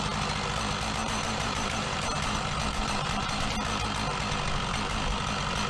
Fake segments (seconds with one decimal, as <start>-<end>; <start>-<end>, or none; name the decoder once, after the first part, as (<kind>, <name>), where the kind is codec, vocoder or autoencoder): 1.0-3.5 (vocoder, BigVGAN v2)